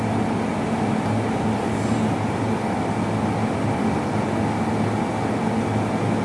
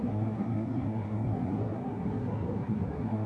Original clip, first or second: first